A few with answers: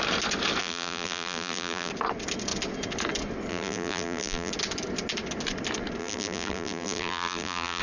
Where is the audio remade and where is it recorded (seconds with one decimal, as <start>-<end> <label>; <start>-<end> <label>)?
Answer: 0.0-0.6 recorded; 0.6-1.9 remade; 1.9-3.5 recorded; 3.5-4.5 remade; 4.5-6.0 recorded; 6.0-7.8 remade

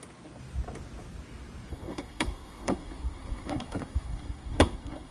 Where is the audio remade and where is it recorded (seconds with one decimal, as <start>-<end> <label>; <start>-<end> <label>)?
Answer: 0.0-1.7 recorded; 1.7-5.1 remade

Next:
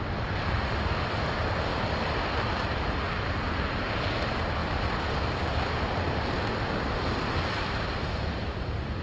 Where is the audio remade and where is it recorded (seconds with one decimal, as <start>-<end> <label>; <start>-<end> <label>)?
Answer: 0.0-9.0 recorded

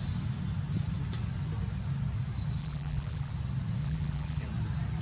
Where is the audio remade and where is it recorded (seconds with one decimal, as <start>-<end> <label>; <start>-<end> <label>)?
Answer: 0.0-2.6 recorded; 2.6-3.3 remade; 3.3-3.8 recorded; 3.8-4.4 remade; 4.4-5.0 recorded